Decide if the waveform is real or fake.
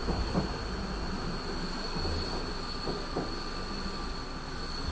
real